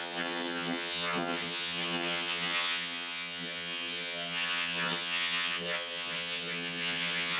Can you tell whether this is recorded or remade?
remade